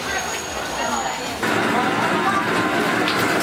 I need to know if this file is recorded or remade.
recorded